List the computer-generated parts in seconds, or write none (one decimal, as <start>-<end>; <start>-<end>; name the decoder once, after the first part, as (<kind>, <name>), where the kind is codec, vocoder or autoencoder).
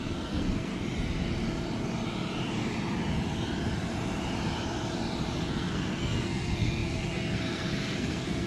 0.0-0.7 (codec, SNAC); 5.5-8.5